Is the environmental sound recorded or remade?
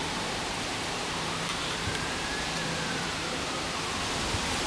remade